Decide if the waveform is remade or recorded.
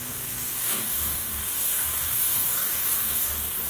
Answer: remade